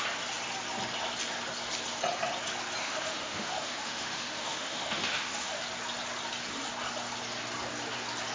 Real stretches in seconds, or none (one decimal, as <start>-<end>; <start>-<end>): 0.0-2.8; 5.6-8.3